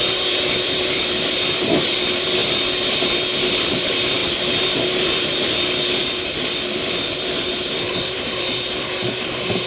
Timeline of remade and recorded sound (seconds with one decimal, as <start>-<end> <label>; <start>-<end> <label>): 0.0-2.4 remade; 2.4-3.6 recorded; 3.6-9.7 remade